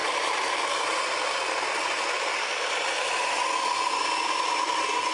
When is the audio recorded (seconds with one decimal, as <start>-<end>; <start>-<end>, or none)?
1.0-5.1